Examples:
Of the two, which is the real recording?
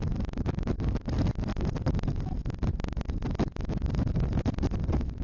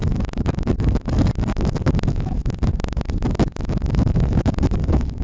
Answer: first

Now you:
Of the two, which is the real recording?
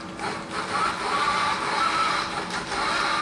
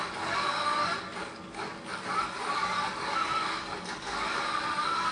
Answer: first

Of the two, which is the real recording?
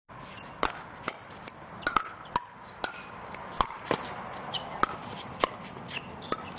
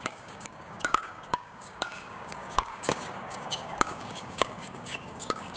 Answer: first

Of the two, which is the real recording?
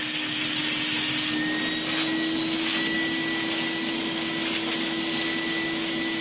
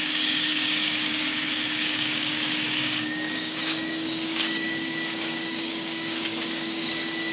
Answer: first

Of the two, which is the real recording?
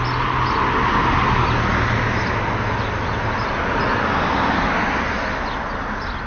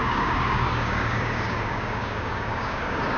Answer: first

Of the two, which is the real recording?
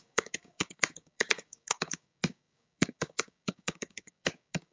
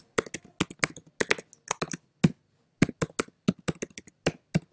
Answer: second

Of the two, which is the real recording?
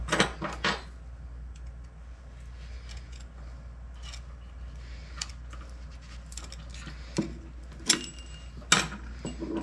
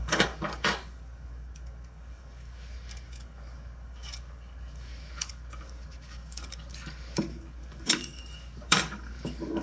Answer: first